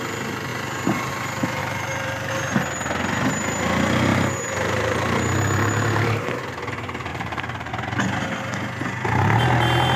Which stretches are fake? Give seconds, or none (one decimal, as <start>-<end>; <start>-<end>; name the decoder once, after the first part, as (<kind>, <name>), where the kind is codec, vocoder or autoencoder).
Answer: 1.6-2.3 (vocoder, BigVGAN v2); 4.1-6.4; 7.1-7.7